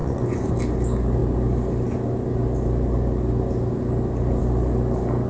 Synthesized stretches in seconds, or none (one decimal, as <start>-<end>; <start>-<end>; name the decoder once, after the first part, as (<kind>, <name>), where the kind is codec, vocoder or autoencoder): 0.0-0.5 (vocoder, Vocos)